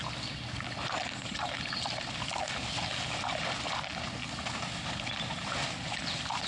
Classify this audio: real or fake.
real